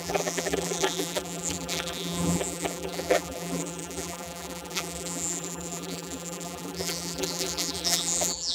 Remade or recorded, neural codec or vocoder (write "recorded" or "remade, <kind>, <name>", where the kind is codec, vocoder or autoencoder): remade, vocoder, BigVGAN v2